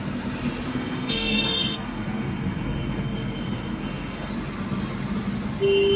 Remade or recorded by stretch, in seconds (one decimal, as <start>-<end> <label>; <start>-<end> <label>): 0.0-0.7 recorded; 0.7-4.3 remade; 4.3-6.0 recorded